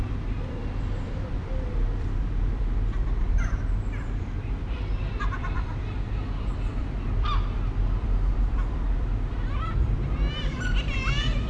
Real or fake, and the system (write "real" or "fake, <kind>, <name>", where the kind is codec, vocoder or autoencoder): fake, vocoder, BigVGAN v2